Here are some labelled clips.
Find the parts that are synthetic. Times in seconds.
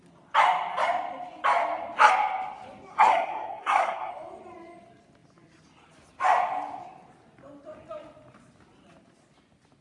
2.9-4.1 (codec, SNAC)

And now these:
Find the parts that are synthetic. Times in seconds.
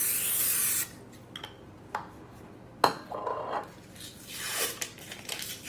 4.5-5.1 (vocoder, BigVGAN v2)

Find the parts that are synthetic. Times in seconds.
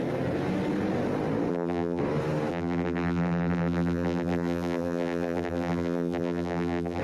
1.5-2.0 (vocoder, BigVGAN v2); 2.5-7.0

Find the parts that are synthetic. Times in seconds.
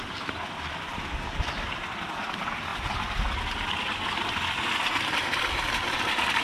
none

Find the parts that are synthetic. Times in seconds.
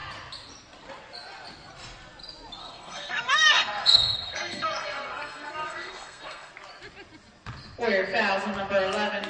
2.6-6.5 (codec, SNAC)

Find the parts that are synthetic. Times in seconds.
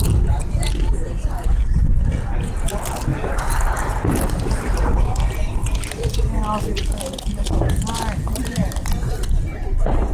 3.1-5.0 (vocoder, BigVGAN v2); 8.2-8.9